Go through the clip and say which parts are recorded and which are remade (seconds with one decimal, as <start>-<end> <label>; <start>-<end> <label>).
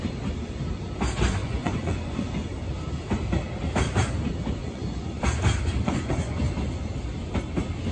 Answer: 0.0-1.4 recorded; 1.4-2.3 remade; 2.3-4.6 recorded; 4.6-5.2 remade; 5.2-5.8 recorded; 5.8-6.4 remade; 6.4-7.9 recorded